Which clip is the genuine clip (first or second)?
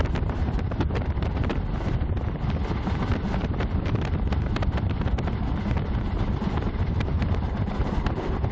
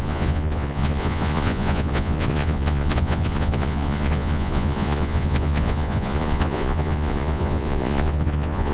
first